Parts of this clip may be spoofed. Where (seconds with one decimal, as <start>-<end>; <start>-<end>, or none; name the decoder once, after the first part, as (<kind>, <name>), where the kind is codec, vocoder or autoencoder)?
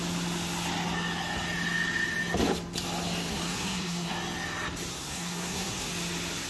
3.3-4.1 (codec, SNAC); 4.9-5.9